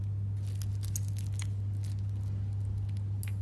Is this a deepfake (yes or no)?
no